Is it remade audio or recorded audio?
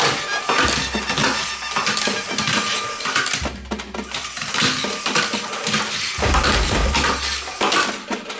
recorded